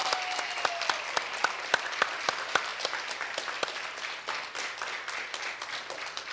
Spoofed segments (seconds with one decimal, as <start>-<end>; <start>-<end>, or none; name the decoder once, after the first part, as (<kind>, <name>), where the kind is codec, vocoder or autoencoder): none